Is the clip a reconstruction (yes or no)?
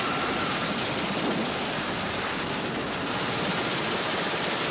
no